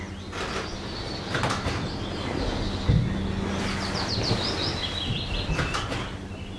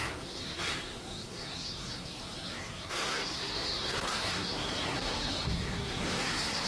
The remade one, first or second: second